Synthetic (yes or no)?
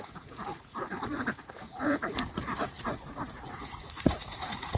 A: yes